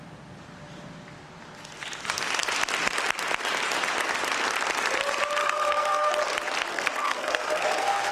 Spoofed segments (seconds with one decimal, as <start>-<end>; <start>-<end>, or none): 5.4-6.1; 6.7-8.1